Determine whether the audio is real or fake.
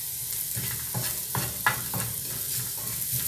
real